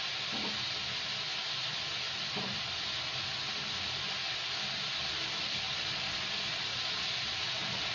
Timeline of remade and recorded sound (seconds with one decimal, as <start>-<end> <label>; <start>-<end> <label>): 0.0-6.7 recorded; 6.7-7.9 remade